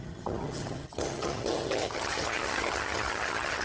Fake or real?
fake